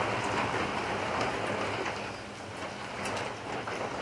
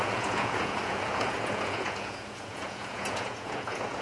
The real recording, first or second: first